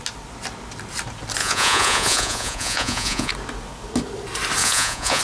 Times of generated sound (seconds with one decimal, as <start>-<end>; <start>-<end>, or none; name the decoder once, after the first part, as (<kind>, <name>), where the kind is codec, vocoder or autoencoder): 1.4-3.3 (vocoder, Vocos); 4.6-5.2